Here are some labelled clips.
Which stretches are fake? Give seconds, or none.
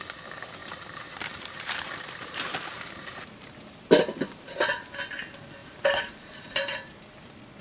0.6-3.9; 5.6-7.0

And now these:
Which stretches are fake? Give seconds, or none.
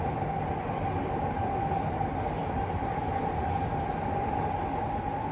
none